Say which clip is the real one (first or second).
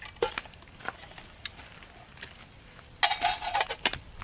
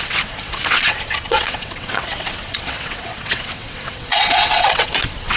first